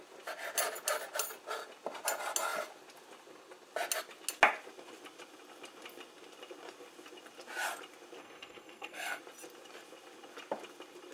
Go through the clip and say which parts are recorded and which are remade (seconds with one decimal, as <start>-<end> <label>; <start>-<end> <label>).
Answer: 0.0-8.2 recorded; 8.2-9.2 remade; 9.2-11.1 recorded

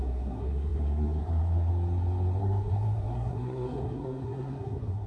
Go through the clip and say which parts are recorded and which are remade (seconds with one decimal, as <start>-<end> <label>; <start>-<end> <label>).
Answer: 0.0-1.7 remade; 1.7-2.4 recorded; 2.4-5.1 remade

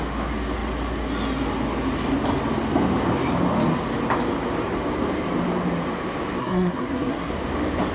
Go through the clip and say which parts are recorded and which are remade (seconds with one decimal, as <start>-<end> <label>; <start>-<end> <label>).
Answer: 0.0-6.4 recorded; 6.4-7.3 remade; 7.3-7.9 recorded

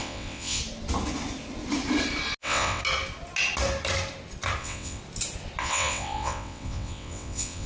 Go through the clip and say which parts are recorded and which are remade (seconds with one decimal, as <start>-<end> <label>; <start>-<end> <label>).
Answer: 0.0-0.6 remade; 0.6-2.4 recorded; 2.4-2.8 remade; 2.8-4.6 recorded; 4.6-5.0 remade; 5.0-5.6 recorded; 5.6-7.7 remade

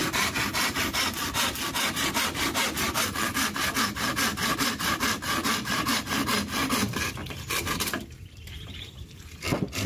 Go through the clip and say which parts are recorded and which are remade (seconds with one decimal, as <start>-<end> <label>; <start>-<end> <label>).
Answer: 0.0-3.1 remade; 3.1-5.4 recorded; 5.4-6.0 remade; 6.0-6.6 recorded; 6.6-9.2 remade; 9.2-9.9 recorded